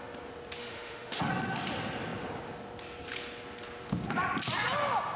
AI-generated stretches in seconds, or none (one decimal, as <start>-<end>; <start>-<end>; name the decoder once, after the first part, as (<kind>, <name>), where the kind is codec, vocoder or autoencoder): 0.6-1.3 (autoencoder, DAC-VAE)